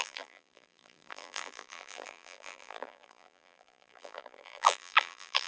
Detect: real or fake fake